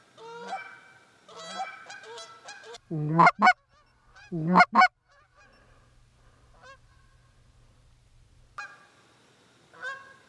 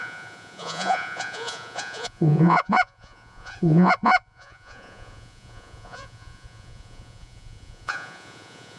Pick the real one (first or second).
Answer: first